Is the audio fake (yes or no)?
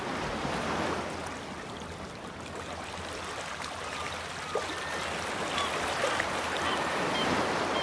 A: no